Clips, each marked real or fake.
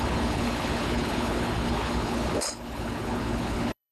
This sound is fake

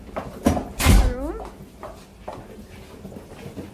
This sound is real